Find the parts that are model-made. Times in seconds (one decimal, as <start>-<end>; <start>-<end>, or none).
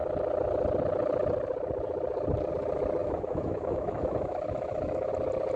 3.0-5.1